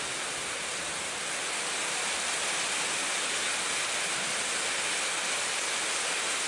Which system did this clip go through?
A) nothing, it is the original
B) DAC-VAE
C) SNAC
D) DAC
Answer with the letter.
A